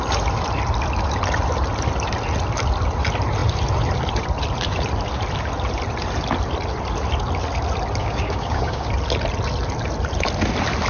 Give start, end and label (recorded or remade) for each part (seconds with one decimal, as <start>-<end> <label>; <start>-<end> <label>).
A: 0.0-8.0 recorded; 8.0-8.9 remade; 8.9-10.9 recorded